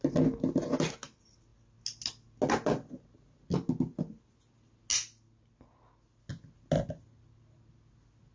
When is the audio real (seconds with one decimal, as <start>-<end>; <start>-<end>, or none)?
0.0-8.3